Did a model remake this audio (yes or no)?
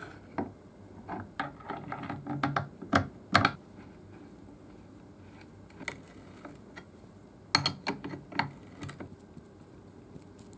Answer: no